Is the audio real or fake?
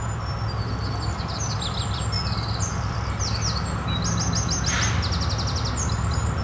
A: real